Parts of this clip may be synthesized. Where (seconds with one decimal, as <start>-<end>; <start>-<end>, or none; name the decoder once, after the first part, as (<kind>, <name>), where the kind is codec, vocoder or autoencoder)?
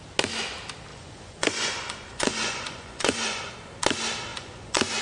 0.9-3.5 (vocoder, Vocos); 4.3-5.0